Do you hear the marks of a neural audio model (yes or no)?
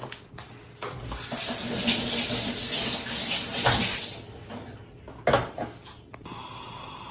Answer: no